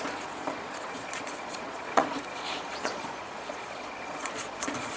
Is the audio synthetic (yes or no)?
yes